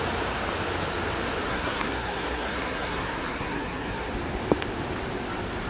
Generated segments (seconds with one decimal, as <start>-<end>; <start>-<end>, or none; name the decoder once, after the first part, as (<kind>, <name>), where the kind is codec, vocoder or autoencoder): 1.5-4.1 (codec, SNAC)